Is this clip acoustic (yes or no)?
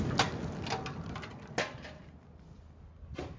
yes